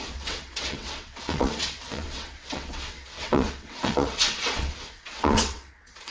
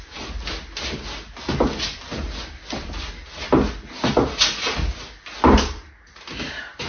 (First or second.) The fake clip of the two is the first